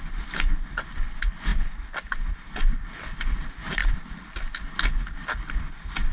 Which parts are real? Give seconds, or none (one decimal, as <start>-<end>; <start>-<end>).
0.0-6.1